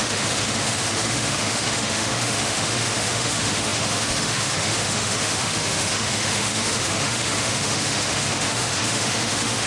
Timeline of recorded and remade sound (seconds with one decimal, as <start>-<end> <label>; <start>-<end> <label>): 0.0-9.7 remade